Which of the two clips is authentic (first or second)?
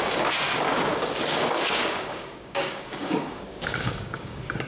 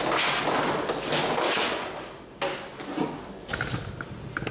second